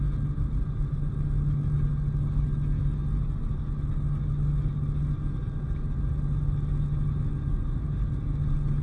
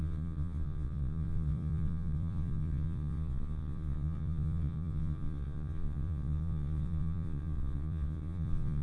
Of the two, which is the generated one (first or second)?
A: second